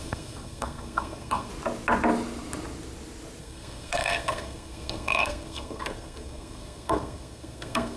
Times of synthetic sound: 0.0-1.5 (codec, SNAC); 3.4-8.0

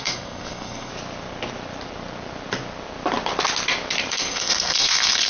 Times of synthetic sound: 0.0-0.9 (codec, SNAC); 4.1-5.3

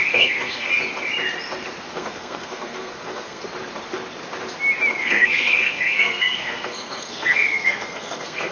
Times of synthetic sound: 0.0-0.7 (codec, SNAC); 1.9-3.4; 5.0-8.5

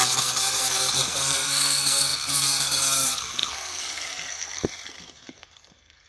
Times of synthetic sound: 0.0-6.1 (codec, SNAC)

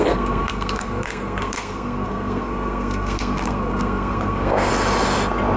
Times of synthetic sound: 0.0-4.7 (codec, SNAC)

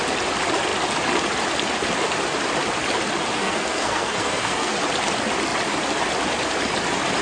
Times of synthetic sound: 3.4-4.8 (codec, SNAC)